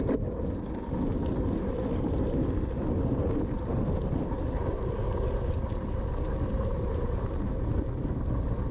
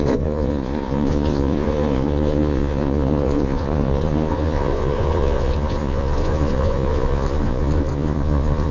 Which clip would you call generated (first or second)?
second